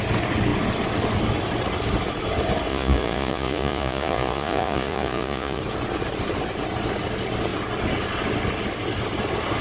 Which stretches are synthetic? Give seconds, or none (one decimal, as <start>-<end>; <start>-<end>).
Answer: 2.7-5.6